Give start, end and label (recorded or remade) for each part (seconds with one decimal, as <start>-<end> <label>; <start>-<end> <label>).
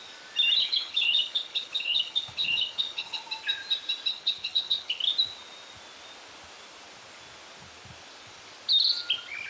0.0-0.6 recorded; 0.6-3.2 remade; 3.2-4.1 recorded; 4.1-5.0 remade; 5.0-9.5 recorded